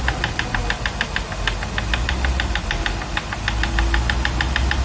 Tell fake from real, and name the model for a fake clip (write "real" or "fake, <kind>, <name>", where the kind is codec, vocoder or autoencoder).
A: real